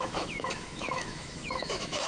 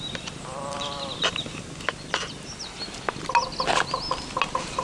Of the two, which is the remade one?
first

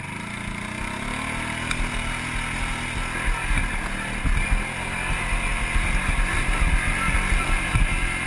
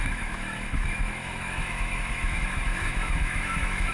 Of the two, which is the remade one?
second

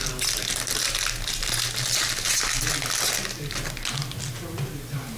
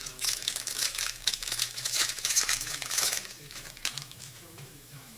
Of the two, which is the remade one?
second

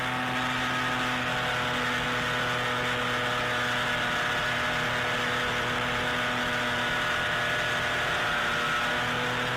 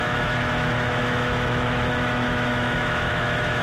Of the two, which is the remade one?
second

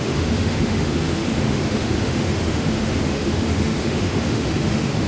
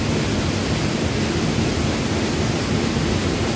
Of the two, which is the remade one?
first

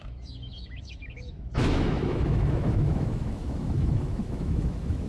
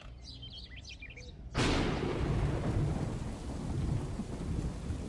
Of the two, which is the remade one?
first